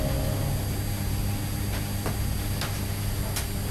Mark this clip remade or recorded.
recorded